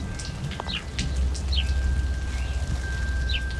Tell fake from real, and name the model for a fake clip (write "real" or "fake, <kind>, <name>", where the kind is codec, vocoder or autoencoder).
real